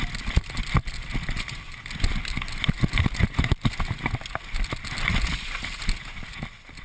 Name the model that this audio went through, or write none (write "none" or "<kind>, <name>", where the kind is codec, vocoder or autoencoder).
none